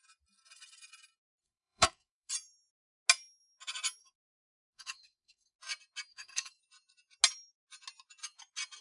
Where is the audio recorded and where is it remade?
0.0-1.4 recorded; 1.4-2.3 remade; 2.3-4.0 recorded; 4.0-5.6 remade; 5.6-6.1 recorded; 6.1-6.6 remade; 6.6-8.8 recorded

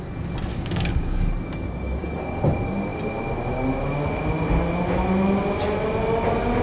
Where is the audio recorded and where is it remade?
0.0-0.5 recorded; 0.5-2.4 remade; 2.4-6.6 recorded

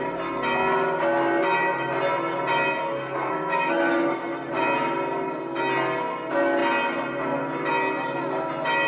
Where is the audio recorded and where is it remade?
0.0-2.8 recorded; 2.8-4.5 remade; 4.5-8.9 recorded